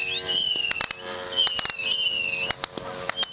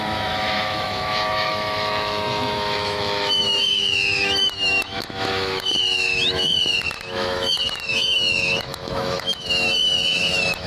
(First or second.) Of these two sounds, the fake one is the second